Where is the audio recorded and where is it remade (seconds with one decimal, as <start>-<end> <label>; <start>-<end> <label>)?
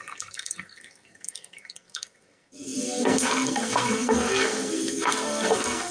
0.0-5.9 remade